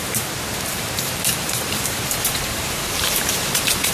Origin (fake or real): fake